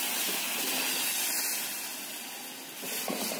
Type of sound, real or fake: real